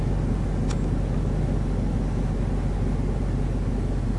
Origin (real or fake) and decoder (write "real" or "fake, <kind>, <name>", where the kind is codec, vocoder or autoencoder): real